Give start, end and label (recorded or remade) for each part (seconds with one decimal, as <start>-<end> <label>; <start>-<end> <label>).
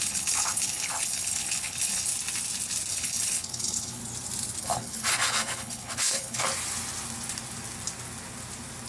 0.0-2.1 remade; 2.1-2.9 recorded; 2.9-4.0 remade; 4.0-4.6 recorded; 4.6-6.4 remade; 6.4-8.9 recorded